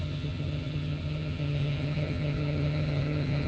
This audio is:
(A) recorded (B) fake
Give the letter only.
B